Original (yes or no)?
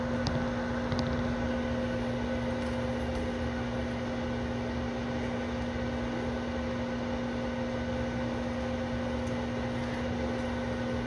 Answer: yes